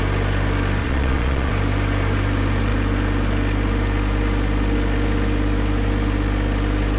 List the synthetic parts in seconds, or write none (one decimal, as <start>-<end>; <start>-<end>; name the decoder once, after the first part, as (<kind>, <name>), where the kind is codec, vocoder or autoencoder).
0.8-1.5 (vocoder, Vocos)